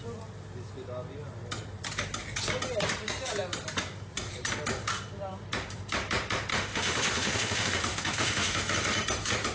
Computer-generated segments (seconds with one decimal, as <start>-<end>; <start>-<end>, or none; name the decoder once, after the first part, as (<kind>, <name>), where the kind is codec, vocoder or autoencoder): 6.5-8.6 (autoencoder, DAC-VAE)